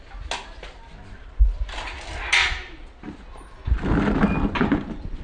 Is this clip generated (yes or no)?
no